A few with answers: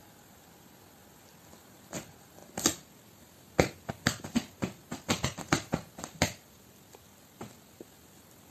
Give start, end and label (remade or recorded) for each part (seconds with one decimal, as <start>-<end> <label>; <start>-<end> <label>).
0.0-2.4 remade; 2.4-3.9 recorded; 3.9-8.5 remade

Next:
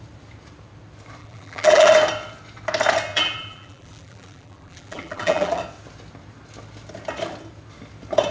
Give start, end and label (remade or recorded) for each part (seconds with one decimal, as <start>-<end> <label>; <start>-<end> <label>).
0.0-1.2 recorded; 1.2-1.9 remade; 1.9-3.1 recorded; 3.1-5.6 remade; 5.6-8.3 recorded

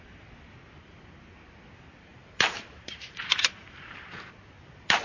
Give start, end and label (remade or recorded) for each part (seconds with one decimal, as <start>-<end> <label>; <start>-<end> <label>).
0.0-2.1 recorded; 2.1-5.0 remade